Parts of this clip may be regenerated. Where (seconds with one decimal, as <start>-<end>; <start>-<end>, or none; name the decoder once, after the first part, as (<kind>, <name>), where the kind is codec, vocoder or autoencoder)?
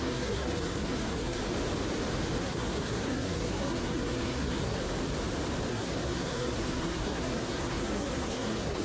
0.0-1.4 (codec, SNAC); 2.4-4.8; 5.7-8.8